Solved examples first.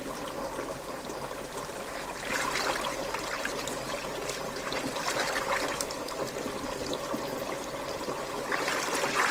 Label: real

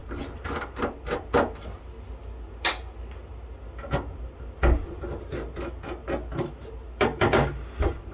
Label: real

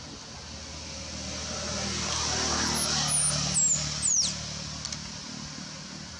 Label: real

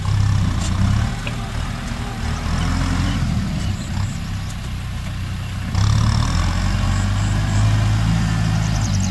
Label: real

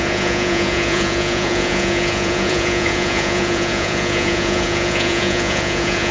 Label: fake